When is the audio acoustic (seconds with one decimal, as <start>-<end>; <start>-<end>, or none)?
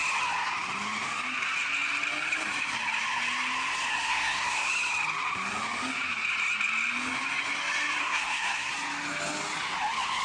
0.0-3.9; 4.7-8.0; 8.7-10.2